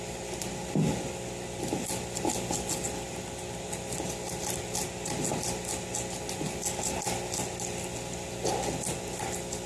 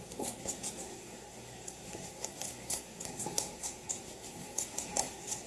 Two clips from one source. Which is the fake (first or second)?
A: second